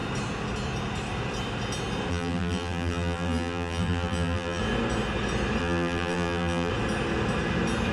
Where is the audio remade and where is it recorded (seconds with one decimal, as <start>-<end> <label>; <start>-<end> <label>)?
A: 0.0-2.1 recorded; 2.1-4.6 remade; 4.6-5.6 recorded; 5.6-6.7 remade; 6.7-7.9 recorded